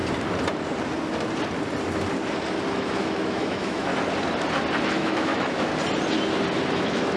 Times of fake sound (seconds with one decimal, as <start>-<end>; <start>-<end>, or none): 2.8-3.9; 4.8-5.7; 6.7-7.2